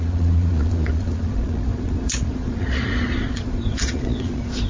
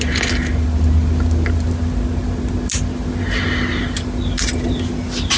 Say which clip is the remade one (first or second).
first